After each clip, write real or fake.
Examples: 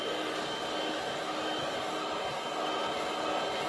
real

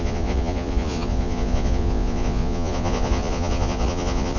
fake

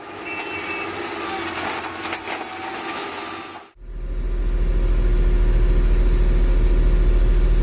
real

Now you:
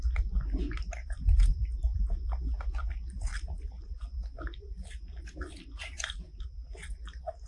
real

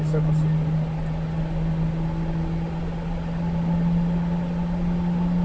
real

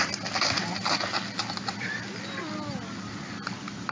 real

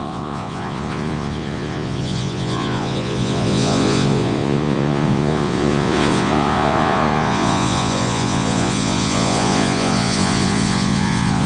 fake